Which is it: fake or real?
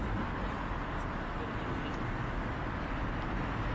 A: real